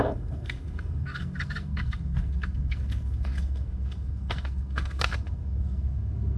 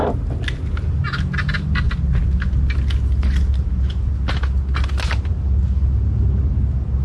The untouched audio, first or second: second